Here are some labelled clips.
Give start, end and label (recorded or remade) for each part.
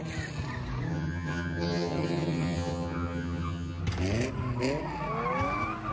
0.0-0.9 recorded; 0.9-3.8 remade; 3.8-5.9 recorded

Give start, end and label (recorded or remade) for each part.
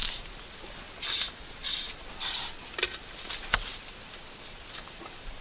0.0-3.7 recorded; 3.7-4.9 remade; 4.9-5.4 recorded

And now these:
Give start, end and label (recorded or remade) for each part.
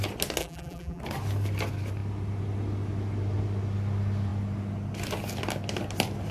0.0-0.4 recorded; 0.4-1.0 remade; 1.0-6.3 recorded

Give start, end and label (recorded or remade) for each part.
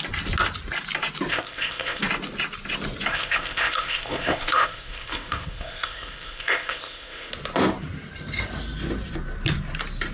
0.0-1.3 recorded; 1.3-2.0 remade; 2.0-3.1 recorded; 3.1-7.3 remade; 7.3-10.1 recorded